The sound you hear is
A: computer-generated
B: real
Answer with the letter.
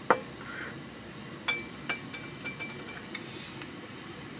B